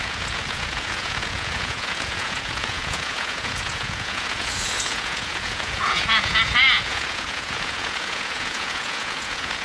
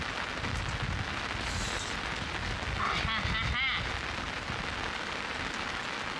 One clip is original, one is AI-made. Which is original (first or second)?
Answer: second